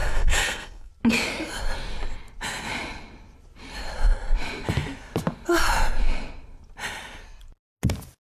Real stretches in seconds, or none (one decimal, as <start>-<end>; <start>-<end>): 0.9-8.3